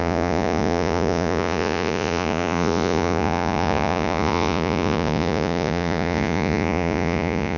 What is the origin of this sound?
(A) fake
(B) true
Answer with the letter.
A